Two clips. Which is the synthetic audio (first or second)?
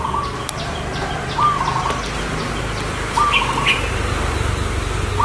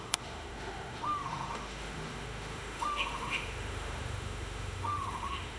second